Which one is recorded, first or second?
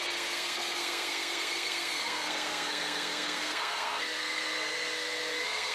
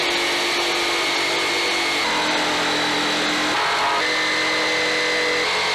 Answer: second